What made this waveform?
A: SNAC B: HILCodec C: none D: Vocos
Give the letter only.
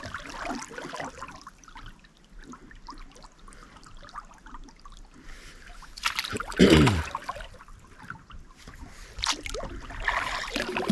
C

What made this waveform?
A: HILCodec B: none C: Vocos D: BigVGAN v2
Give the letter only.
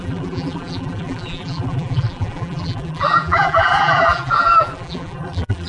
D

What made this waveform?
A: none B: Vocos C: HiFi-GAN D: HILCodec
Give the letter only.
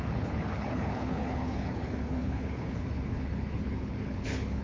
D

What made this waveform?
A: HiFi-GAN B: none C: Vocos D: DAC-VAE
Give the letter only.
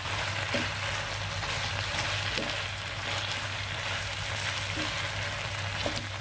B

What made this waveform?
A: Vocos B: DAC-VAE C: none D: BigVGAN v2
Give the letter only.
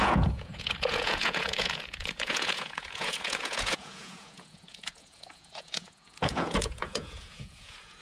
A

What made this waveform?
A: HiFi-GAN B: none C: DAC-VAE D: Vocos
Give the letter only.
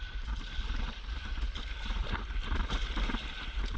B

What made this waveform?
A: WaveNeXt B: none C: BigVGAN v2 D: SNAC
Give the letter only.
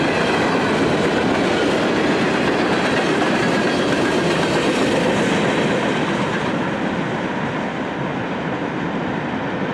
B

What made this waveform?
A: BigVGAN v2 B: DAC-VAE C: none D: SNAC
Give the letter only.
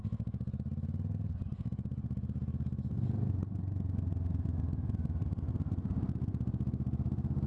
C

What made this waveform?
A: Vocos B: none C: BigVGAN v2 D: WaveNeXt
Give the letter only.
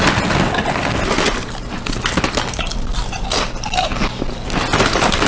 B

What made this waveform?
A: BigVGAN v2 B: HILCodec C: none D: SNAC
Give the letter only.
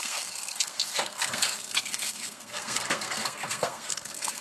D